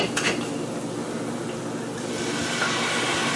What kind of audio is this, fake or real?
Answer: real